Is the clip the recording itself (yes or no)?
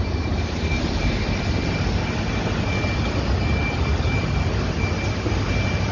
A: yes